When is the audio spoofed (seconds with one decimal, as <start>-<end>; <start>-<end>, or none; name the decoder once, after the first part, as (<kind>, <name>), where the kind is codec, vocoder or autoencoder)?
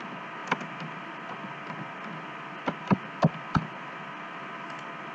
none